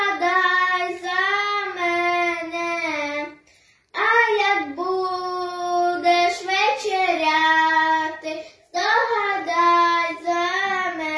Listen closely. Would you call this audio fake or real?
real